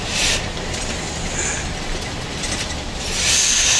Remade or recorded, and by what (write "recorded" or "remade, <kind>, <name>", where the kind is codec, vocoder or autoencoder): recorded